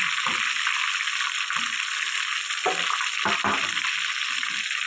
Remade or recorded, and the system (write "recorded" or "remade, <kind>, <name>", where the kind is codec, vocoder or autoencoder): recorded